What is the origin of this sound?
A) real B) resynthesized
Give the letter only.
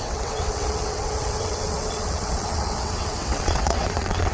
B